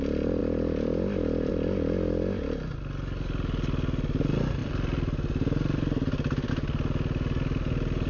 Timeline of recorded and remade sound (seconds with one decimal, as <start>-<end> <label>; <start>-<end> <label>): 0.0-0.4 recorded; 0.4-1.5 remade; 1.5-4.6 recorded; 4.6-6.5 remade; 6.5-8.1 recorded